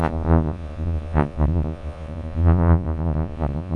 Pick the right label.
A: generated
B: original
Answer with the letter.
A